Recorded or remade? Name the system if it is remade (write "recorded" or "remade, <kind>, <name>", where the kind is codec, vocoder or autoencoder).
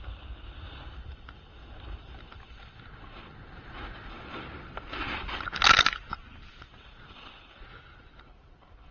recorded